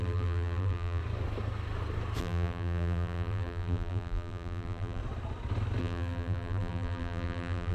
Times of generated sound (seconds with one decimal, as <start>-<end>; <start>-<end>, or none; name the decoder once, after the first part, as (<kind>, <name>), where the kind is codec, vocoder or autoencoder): 0.0-1.0 (vocoder, BigVGAN v2); 2.2-5.0; 5.8-7.7

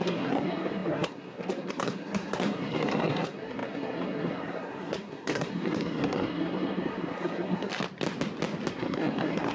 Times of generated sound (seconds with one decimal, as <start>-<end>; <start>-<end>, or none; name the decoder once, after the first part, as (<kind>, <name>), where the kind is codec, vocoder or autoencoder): 0.0-7.7 (codec, SNAC); 8.7-9.5

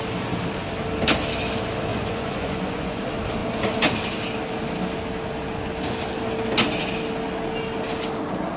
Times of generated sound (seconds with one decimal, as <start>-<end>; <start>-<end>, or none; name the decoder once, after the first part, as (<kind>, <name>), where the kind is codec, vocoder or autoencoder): 1.9-3.0 (vocoder, Vocos)

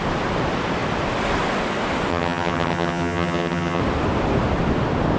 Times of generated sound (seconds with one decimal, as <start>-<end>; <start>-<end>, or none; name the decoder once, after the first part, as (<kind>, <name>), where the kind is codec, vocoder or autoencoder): 2.1-3.8 (vocoder, HiFi-GAN)